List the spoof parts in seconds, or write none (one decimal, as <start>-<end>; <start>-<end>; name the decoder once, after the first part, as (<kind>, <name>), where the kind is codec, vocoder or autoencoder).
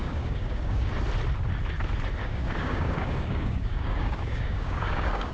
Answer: 0.0-0.9 (codec, DAC); 2.2-5.3